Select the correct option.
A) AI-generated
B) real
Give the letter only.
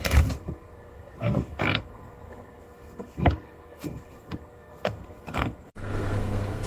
A